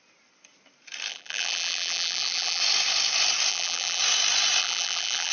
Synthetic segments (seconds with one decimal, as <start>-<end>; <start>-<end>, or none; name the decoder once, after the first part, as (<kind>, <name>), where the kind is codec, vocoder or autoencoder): 1.1-2.6 (vocoder, BigVGAN v2); 3.5-4.0; 4.6-5.3

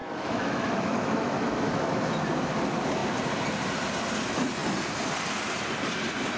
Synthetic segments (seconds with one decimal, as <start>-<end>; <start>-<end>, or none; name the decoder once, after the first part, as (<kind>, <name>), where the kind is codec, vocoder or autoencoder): 0.0-2.0 (autoencoder, DAC-VAE)

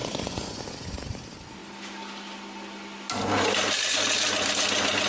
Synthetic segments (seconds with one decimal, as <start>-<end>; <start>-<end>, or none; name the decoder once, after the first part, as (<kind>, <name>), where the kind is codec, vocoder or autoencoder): 0.0-0.6 (vocoder, Vocos)

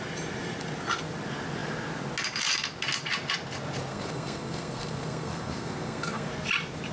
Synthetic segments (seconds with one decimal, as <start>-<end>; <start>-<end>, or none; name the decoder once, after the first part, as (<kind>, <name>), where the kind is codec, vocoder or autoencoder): 3.9-6.3 (codec, SNAC)

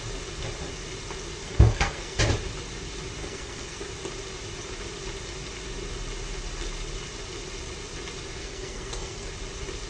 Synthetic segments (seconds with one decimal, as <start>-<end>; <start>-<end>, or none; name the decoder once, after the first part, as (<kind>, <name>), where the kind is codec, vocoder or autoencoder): 1.4-2.2 (codec, SNAC); 3.2-3.8; 8.4-9.3

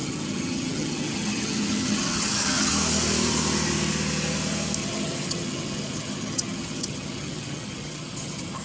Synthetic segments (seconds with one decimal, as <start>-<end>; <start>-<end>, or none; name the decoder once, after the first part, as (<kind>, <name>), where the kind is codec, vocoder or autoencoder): 0.0-2.7 (vocoder, HiFi-GAN); 4.8-8.6

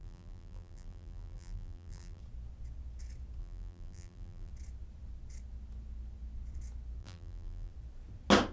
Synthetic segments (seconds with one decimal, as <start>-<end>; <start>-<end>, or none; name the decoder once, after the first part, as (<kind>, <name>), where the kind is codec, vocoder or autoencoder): 0.0-2.2 (vocoder, BigVGAN v2); 3.4-4.5; 7.0-7.7

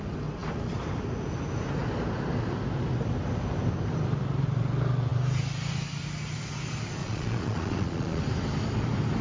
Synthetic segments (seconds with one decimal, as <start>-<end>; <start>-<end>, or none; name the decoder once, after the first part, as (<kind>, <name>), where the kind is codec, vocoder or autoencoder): 7.0-8.2 (vocoder, Vocos)